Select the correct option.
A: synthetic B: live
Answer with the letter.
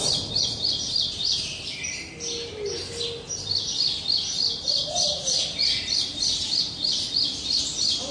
A